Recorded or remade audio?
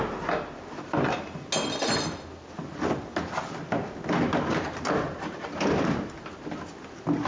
recorded